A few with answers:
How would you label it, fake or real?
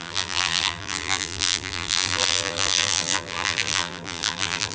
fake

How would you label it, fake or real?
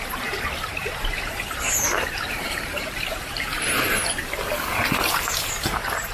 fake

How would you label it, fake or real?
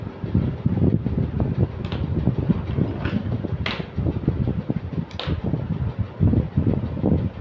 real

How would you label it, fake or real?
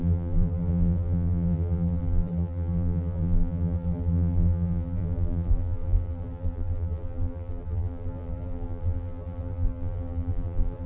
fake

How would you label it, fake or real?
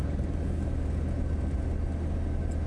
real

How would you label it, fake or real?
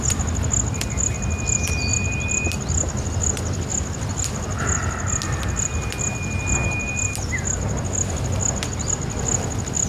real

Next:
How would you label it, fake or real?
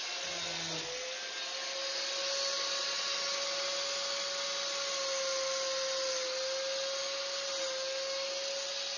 real